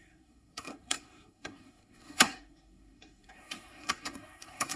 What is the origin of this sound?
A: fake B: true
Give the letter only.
A